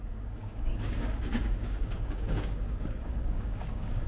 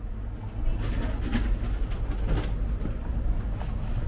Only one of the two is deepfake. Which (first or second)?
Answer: first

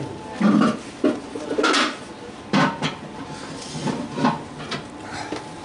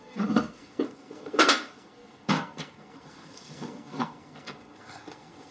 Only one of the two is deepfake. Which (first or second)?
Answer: second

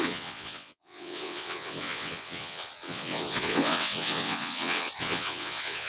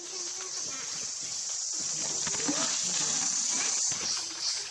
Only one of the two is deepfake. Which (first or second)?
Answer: first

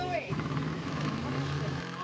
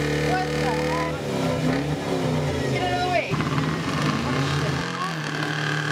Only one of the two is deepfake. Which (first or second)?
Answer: first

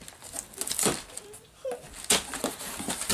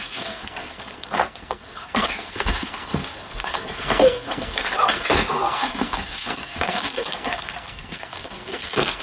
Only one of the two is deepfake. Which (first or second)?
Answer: second